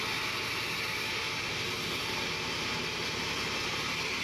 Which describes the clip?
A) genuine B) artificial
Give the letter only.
A